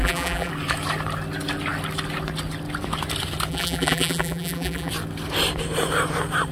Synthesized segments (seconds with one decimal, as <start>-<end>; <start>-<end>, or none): 0.0-0.5; 3.5-4.9